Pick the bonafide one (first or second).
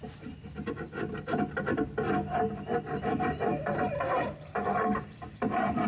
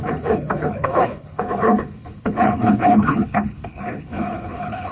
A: first